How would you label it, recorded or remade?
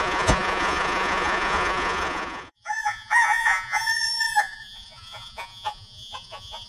remade